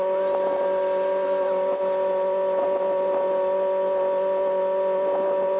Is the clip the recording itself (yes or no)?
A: yes